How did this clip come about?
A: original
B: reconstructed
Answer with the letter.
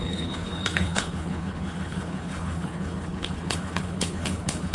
B